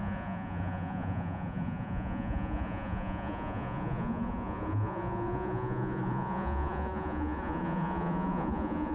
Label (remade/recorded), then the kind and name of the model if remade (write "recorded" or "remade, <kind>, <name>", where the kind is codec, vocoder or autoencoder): remade, vocoder, Vocos